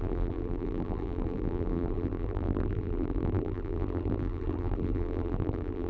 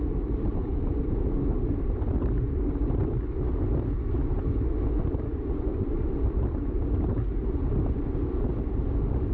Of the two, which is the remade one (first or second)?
first